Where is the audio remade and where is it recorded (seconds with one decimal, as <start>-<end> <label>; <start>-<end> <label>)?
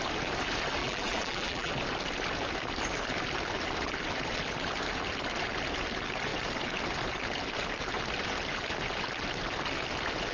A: 0.0-0.8 recorded; 0.8-1.7 remade; 1.7-10.3 recorded